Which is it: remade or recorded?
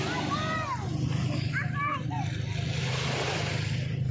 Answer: recorded